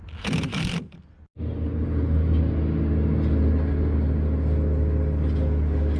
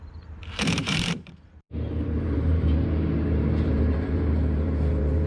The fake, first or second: second